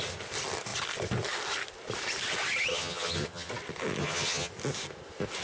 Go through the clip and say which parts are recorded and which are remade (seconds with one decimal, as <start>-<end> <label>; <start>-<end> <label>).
0.0-2.7 recorded; 2.7-3.5 remade; 3.5-4.0 recorded; 4.0-4.5 remade; 4.5-5.4 recorded